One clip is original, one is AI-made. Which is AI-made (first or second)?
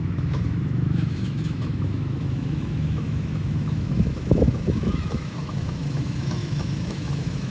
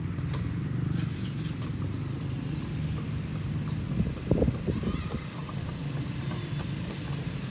first